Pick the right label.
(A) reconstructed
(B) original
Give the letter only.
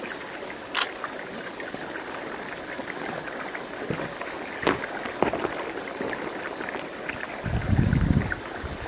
B